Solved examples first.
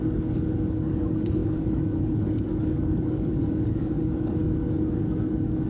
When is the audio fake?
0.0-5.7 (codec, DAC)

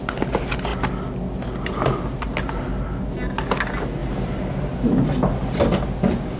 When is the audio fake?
none